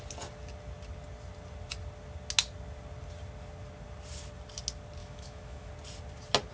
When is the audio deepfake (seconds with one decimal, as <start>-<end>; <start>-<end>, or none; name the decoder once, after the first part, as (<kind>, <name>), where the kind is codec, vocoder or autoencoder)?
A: 5.0-5.7 (autoencoder, DAC-VAE)